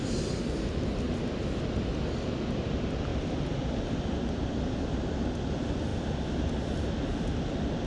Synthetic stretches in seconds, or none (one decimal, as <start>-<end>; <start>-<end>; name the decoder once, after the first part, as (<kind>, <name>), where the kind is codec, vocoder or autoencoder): 3.1-3.8 (vocoder, BigVGAN v2)